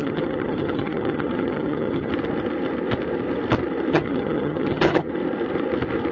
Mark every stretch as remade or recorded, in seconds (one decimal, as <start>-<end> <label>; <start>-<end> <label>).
0.0-2.1 remade; 2.1-3.9 recorded; 3.9-5.1 remade; 5.1-6.1 recorded